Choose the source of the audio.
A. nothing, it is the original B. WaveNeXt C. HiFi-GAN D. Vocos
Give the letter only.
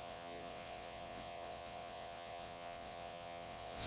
B